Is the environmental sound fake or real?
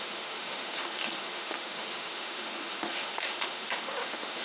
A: fake